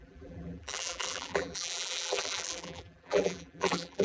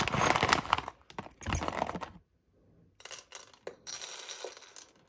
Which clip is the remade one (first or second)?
first